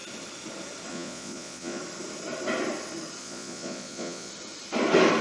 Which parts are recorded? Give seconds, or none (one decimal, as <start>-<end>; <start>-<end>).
0.0-0.9; 1.8-3.2; 4.3-5.2